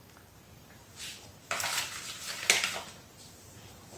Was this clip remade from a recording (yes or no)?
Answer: no